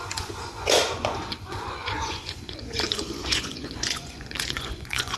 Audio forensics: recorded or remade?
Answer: remade